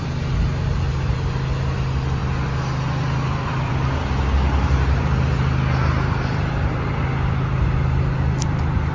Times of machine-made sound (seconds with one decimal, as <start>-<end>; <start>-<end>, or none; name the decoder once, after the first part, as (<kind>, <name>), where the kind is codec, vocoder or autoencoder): none